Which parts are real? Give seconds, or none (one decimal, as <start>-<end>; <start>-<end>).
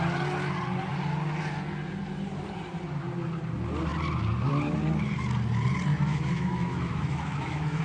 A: 0.0-5.9